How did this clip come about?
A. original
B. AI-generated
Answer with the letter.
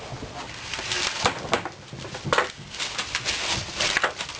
A